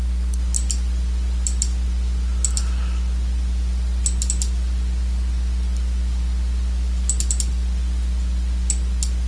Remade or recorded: recorded